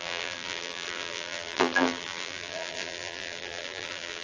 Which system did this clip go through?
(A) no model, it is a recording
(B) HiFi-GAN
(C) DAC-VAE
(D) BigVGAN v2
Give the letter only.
D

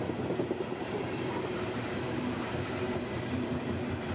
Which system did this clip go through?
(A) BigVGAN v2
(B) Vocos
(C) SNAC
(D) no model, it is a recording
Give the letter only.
A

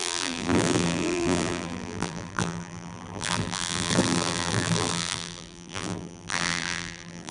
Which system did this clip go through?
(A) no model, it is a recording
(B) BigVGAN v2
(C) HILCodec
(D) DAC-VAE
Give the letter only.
B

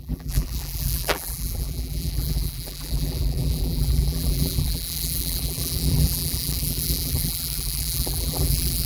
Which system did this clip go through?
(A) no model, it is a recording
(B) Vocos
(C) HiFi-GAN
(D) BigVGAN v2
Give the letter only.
D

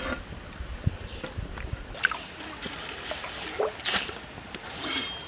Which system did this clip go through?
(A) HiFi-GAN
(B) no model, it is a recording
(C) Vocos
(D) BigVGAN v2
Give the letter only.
B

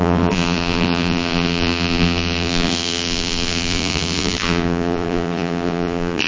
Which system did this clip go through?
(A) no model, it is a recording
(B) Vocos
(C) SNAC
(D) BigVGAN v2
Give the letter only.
D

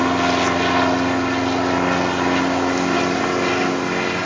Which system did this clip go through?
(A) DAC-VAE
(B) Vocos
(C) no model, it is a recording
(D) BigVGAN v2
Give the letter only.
C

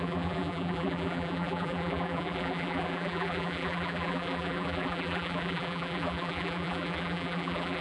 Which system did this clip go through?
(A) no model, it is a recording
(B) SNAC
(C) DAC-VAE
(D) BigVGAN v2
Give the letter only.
D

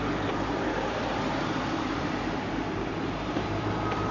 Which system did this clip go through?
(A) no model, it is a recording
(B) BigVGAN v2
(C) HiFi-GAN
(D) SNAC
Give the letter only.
B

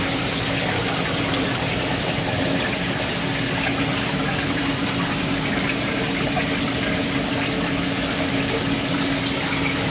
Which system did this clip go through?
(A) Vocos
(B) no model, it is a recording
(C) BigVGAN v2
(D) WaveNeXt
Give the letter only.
B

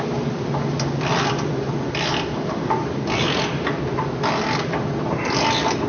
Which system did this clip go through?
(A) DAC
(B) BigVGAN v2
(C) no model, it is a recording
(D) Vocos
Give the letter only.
B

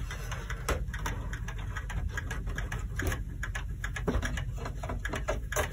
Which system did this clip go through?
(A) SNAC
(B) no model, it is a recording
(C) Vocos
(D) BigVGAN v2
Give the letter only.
B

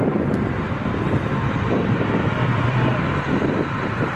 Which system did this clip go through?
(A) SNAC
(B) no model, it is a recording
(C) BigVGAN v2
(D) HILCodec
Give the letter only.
C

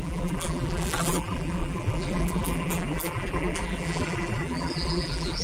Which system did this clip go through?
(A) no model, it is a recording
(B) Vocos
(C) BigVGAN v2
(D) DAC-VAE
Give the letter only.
C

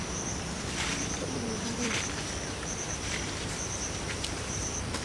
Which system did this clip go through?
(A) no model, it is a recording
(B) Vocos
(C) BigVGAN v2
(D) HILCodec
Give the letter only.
C